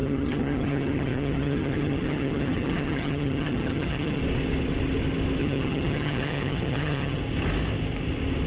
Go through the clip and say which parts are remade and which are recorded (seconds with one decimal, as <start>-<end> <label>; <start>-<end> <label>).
0.0-4.2 remade; 4.2-5.4 recorded; 5.4-7.2 remade; 7.2-8.5 recorded